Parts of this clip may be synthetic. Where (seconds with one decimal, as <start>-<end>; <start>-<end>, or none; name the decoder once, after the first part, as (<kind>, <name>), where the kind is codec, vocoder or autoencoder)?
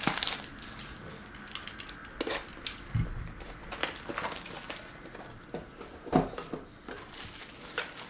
none